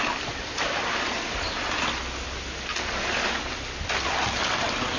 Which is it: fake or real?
real